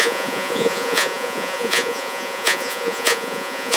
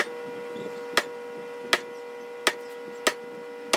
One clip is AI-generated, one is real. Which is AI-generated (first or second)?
first